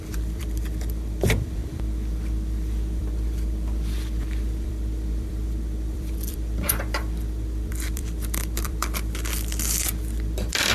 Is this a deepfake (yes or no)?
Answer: yes